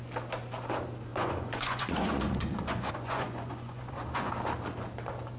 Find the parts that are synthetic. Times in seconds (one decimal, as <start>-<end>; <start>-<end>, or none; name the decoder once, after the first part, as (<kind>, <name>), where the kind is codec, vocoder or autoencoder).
1.1-4.3 (vocoder, Vocos)